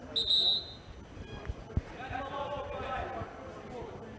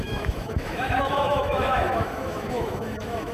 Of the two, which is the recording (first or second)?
first